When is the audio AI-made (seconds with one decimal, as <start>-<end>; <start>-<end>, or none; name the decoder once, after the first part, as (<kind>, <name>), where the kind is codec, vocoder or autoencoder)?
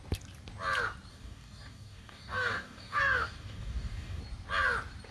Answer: 1.1-4.2 (codec, DAC)